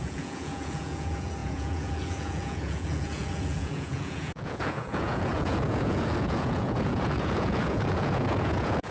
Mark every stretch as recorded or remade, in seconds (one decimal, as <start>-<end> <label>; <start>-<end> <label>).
0.0-8.9 remade

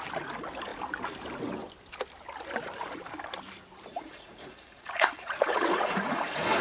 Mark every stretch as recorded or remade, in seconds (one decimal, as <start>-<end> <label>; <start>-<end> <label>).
0.0-3.9 recorded; 3.9-6.6 remade

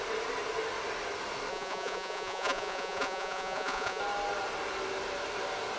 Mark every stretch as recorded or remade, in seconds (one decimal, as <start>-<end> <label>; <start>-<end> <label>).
0.0-1.5 recorded; 1.5-4.0 remade; 4.0-5.8 recorded

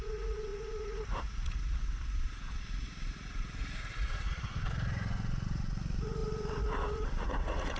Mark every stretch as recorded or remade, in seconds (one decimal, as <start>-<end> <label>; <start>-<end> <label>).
0.0-7.8 remade